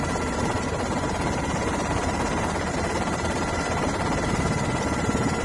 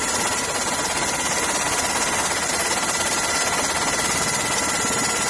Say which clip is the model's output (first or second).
first